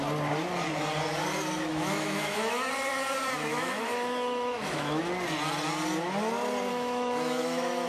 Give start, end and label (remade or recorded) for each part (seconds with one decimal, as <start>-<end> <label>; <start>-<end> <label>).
0.0-1.7 recorded; 1.7-2.7 remade; 2.7-3.5 recorded; 3.5-5.0 remade; 5.0-6.7 recorded; 6.7-7.9 remade